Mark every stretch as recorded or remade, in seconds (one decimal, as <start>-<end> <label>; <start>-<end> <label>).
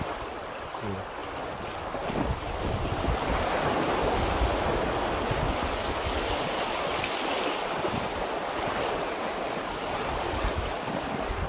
0.0-11.5 recorded